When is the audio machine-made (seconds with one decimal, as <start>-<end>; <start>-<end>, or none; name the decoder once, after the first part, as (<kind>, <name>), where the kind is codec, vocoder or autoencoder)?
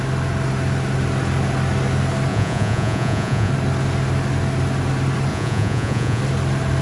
2.3-3.5 (vocoder, Vocos); 5.3-6.2